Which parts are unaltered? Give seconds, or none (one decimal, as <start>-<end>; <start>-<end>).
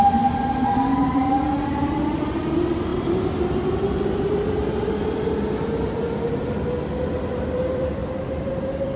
0.0-9.0